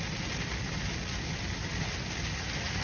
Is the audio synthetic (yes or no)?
no